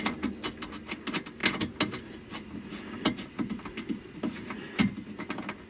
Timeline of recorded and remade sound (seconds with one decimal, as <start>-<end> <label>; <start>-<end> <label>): 0.0-5.7 recorded